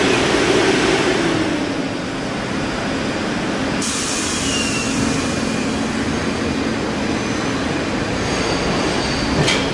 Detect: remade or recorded recorded